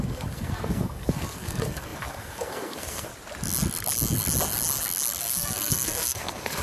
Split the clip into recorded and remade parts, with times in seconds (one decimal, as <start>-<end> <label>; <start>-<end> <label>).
0.0-3.1 remade; 3.1-5.2 recorded; 5.2-6.6 remade